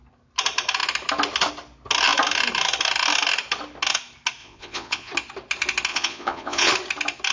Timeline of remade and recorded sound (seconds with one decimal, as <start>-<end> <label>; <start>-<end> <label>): 0.0-4.4 recorded; 4.4-5.1 remade; 5.1-5.9 recorded; 5.9-6.7 remade; 6.7-7.3 recorded